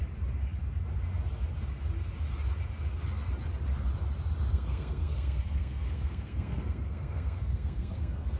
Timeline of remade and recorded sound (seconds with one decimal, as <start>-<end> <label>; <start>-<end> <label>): 0.0-4.5 recorded; 4.5-8.4 remade